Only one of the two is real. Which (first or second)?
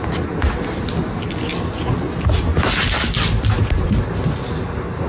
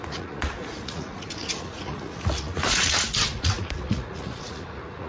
first